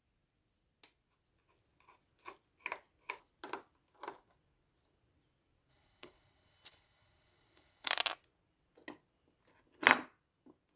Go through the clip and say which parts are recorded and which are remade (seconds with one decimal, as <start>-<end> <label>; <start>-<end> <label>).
0.0-5.7 recorded; 5.7-7.9 remade; 7.9-10.8 recorded